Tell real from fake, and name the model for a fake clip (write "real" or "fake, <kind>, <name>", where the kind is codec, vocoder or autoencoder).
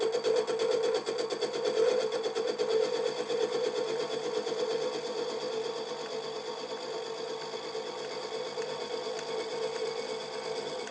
real